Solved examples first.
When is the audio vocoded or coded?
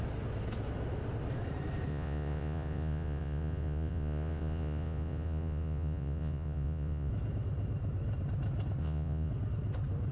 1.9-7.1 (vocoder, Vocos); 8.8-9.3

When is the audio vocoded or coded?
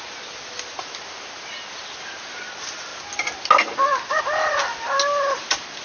none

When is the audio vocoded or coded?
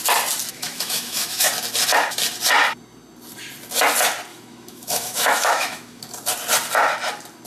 0.5-1.5 (autoencoder, DAC-VAE); 4.3-6.0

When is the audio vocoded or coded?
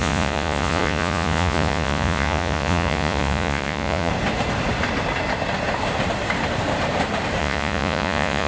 0.0-4.1 (vocoder, Vocos); 7.4-8.5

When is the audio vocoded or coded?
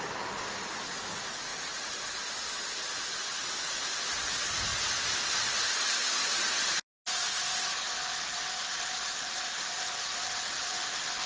none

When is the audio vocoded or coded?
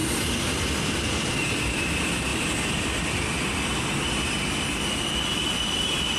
none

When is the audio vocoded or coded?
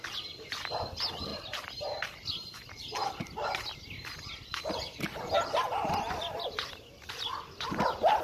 none